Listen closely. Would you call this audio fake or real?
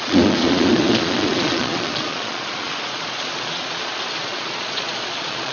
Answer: fake